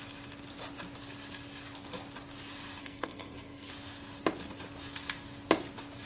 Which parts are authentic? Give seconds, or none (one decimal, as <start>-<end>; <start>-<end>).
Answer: 0.0-2.8; 3.7-6.1

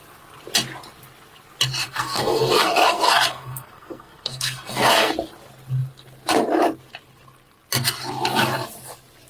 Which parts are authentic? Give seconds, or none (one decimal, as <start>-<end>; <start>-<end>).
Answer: 0.0-1.8; 5.1-9.3